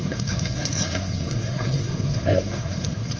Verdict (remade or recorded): remade